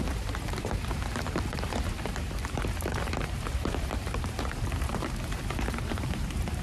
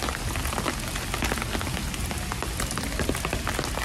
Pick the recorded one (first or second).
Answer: second